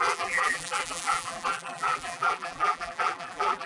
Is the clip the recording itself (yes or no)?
no